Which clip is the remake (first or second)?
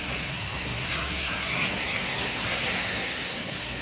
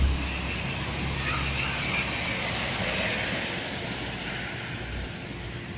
first